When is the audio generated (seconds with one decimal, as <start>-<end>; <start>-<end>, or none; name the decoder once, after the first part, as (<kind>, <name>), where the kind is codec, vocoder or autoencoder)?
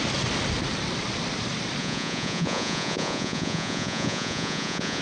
1.8-5.0 (vocoder, Vocos)